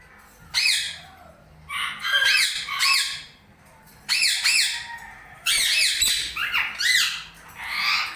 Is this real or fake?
real